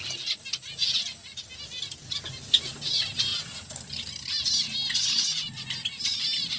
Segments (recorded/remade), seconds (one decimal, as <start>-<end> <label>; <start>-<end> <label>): 0.0-0.8 recorded; 0.8-1.4 remade; 1.4-6.6 recorded